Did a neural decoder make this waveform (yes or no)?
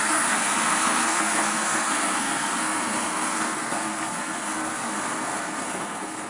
yes